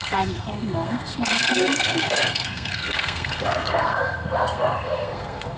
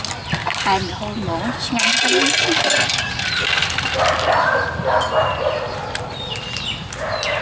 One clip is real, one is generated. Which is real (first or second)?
second